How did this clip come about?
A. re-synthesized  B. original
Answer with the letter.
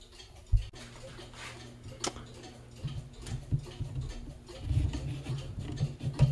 B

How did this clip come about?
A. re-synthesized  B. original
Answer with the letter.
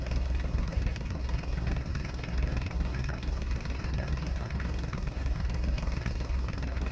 A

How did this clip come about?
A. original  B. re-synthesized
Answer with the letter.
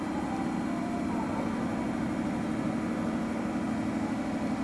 A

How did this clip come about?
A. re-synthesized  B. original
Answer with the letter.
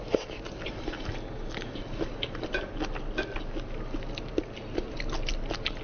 B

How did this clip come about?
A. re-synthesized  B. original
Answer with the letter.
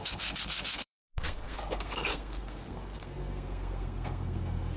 A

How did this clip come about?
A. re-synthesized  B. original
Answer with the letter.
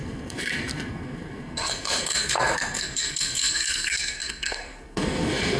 A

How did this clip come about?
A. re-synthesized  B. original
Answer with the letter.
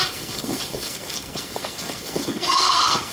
A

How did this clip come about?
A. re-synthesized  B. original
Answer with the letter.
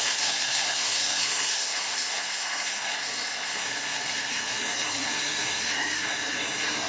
A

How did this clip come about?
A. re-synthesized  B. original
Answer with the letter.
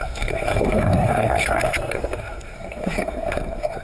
A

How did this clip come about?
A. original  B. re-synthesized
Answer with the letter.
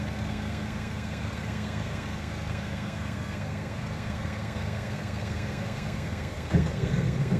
B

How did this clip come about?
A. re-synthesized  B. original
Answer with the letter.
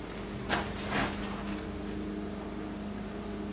B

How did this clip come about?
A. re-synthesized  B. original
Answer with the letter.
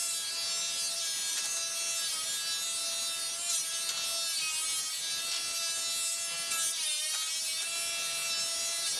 B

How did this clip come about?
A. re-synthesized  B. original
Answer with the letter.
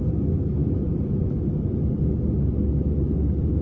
B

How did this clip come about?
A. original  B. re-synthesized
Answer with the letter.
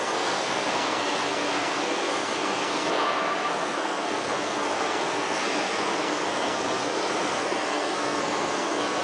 B